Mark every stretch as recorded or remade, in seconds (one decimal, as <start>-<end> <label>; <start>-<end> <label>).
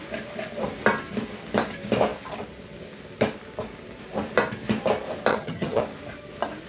0.0-5.3 recorded; 5.3-5.8 remade; 5.8-6.7 recorded